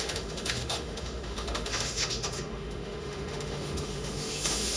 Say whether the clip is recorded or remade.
remade